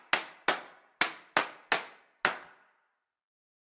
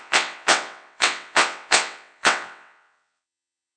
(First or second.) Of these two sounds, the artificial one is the second